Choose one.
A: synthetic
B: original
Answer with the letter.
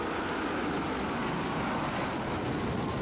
B